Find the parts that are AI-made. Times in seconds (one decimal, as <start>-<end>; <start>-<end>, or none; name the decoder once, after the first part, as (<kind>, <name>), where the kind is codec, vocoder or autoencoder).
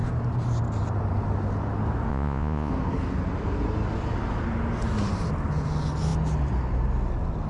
2.1-2.7 (vocoder, Vocos)